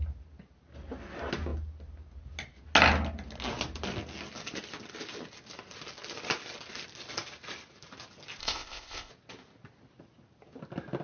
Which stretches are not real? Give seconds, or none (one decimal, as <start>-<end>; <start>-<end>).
8.4-9.1